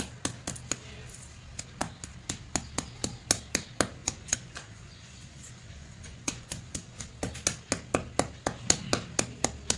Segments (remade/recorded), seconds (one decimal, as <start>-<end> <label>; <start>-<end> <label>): 0.0-4.0 recorded; 4.0-7.0 remade; 7.0-9.8 recorded